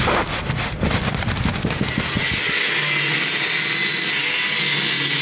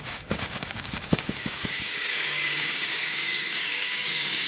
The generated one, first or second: second